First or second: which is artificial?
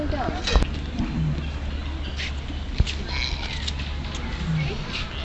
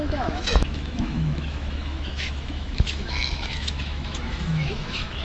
second